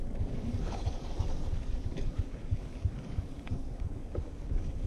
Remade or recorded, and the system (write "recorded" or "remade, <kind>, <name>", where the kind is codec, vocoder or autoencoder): remade, codec, DAC